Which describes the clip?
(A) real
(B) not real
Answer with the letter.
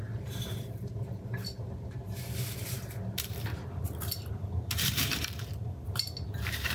B